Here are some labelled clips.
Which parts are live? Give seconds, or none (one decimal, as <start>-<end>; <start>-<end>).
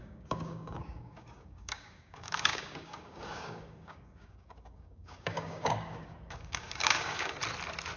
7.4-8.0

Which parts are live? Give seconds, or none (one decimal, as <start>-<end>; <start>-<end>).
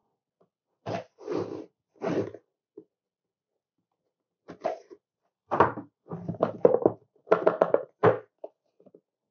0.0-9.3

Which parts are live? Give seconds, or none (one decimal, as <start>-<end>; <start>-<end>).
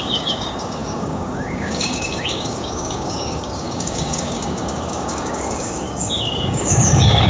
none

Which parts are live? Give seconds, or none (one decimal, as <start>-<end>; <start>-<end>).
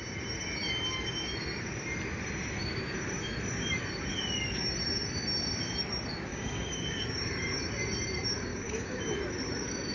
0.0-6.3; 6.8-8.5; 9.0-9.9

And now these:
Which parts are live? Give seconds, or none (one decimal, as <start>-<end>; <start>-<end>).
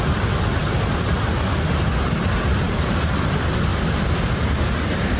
0.0-5.2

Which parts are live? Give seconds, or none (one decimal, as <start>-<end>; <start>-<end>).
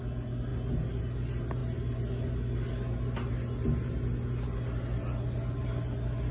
0.0-6.3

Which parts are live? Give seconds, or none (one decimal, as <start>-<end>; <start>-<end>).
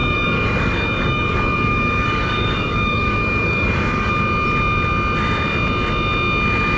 4.1-6.8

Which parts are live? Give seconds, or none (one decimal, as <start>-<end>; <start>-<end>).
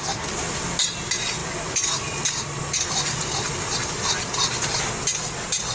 0.0-5.7